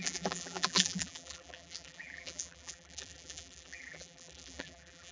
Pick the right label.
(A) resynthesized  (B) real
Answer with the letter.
A